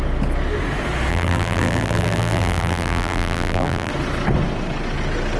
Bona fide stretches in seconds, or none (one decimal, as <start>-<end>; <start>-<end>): 0.0-1.1; 3.9-5.4